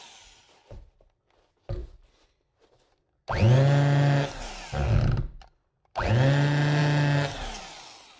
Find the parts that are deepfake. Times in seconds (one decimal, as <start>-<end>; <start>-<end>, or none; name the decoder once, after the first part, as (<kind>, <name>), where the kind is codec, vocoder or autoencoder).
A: none